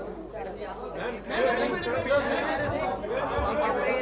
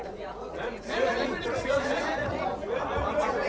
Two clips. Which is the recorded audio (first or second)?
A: first